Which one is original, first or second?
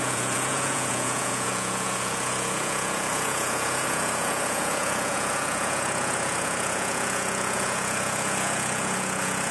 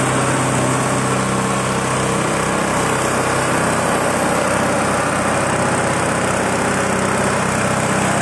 second